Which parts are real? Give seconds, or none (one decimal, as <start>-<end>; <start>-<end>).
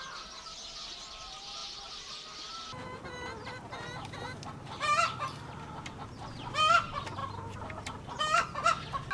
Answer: 0.0-9.1